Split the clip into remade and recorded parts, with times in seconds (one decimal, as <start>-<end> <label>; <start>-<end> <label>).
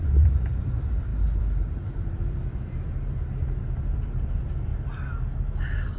0.0-4.7 remade; 4.7-5.6 recorded; 5.6-6.0 remade